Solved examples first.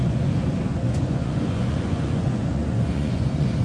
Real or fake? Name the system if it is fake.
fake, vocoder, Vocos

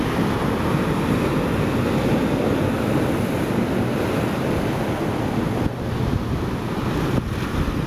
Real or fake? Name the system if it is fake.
real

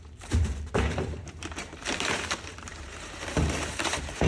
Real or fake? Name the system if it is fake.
fake, vocoder, BigVGAN v2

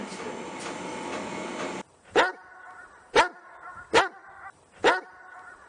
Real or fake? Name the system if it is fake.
real